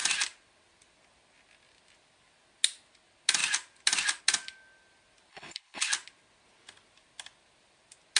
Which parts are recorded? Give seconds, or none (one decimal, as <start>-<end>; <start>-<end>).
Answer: 0.0-5.3; 5.9-8.2